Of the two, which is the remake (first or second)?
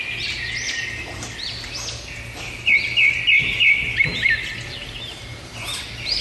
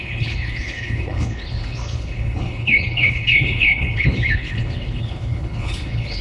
second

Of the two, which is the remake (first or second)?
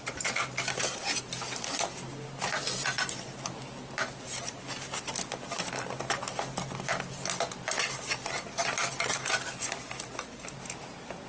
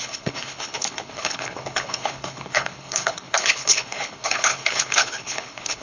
second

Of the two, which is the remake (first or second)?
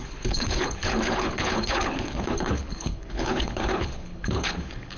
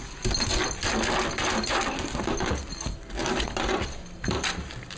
first